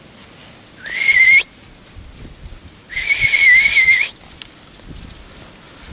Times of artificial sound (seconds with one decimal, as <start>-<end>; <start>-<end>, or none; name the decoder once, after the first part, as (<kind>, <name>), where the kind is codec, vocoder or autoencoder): none